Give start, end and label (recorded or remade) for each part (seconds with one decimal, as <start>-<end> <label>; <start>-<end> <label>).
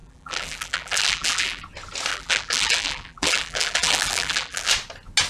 0.0-1.6 remade; 1.6-2.1 recorded; 2.1-4.7 remade; 4.7-5.3 recorded